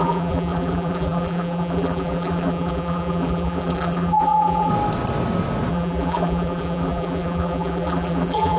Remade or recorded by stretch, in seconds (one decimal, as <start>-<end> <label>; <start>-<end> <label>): 0.0-4.7 remade; 4.7-5.7 recorded; 5.7-8.6 remade